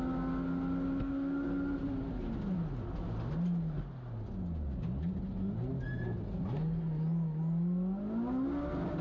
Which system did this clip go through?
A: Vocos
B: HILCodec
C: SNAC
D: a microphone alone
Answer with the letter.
D